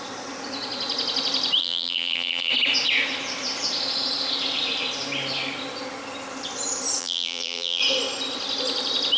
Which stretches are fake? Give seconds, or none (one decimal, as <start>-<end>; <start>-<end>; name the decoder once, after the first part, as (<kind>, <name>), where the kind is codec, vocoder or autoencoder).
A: 1.6-2.5 (vocoder, BigVGAN v2); 7.0-7.8